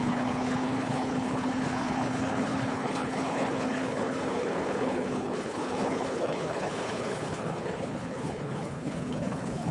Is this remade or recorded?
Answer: remade